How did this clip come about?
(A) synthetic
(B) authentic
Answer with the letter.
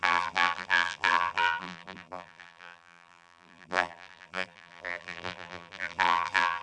A